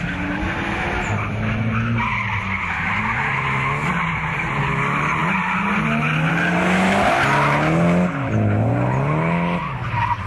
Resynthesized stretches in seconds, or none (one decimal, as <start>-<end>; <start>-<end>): none